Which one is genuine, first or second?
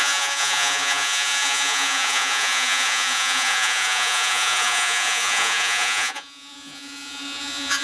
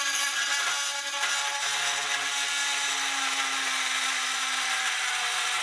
second